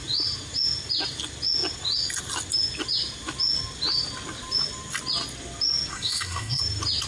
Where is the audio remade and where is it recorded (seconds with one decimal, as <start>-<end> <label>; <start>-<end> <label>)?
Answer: 0.0-5.9 recorded; 5.9-6.6 remade; 6.6-7.1 recorded